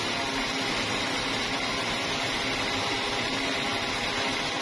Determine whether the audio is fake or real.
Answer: real